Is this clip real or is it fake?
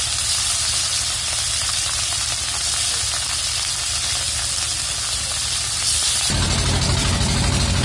real